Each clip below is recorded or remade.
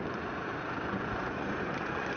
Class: remade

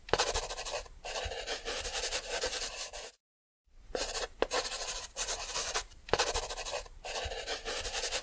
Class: remade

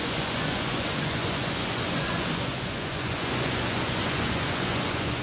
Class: remade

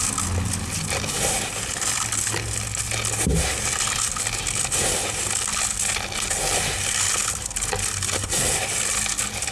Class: recorded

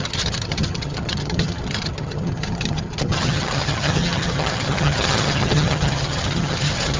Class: remade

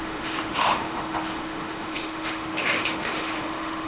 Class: remade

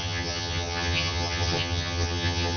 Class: remade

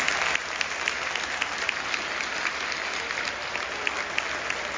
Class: recorded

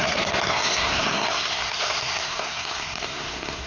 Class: remade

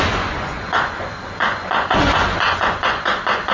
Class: remade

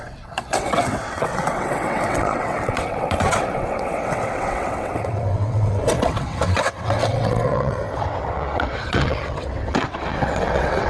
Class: remade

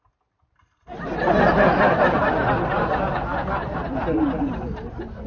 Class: recorded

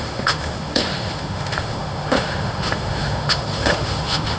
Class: remade